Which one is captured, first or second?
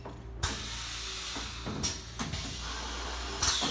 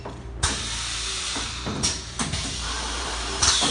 first